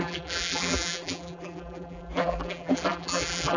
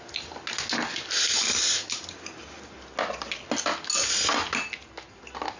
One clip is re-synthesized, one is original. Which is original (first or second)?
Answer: second